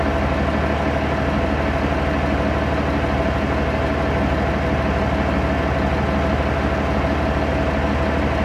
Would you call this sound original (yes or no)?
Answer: yes